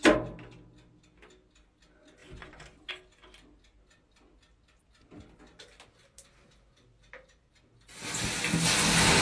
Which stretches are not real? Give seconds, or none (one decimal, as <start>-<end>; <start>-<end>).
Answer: none